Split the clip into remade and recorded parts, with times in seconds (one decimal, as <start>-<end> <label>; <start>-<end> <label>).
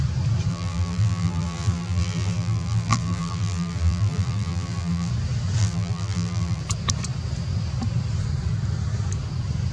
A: 0.0-0.5 recorded; 0.5-5.1 remade; 5.1-5.6 recorded; 5.6-6.6 remade; 6.6-9.7 recorded